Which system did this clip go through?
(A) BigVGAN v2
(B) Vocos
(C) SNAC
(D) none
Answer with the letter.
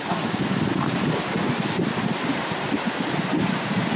D